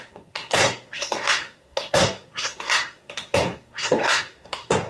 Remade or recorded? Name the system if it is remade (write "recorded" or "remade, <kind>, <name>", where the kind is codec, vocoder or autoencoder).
remade, codec, SNAC